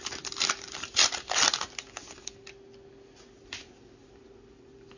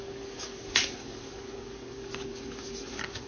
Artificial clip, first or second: second